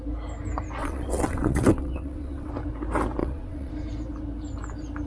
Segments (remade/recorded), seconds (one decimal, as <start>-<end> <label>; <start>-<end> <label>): 0.0-0.8 recorded; 0.8-2.5 remade; 2.5-3.2 recorded; 3.2-3.7 remade; 3.7-5.1 recorded